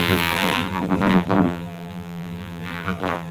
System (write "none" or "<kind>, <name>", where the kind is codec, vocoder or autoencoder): vocoder, BigVGAN v2